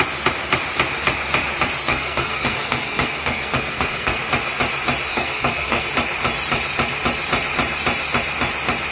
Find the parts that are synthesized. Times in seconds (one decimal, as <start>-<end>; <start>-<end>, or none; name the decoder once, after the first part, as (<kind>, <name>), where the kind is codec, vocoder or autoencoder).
1.9-4.2 (codec, SNAC); 5.1-5.9